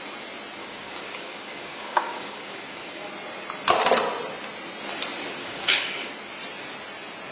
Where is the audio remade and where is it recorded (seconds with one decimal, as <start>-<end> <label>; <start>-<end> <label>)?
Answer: 0.0-0.6 recorded; 0.6-3.1 remade; 3.1-5.4 recorded; 5.4-6.1 remade; 6.1-7.3 recorded